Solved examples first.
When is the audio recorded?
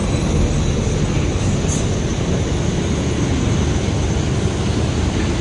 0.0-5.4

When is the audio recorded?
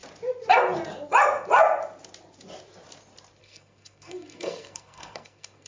0.0-3.4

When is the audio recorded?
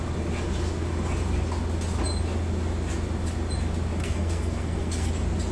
0.0-4.0; 5.1-5.5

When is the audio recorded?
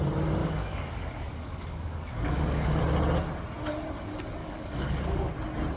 0.0-0.4; 2.8-4.4; 5.3-5.8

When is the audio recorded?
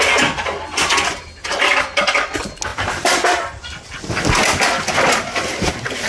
0.0-2.7; 3.6-6.1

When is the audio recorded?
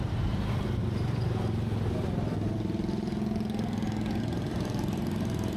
0.8-4.2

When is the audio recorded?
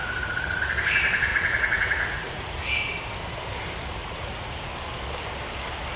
0.6-1.3; 2.7-4.0; 4.7-6.0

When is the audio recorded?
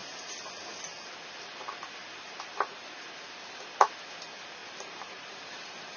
0.5-2.0; 4.1-4.6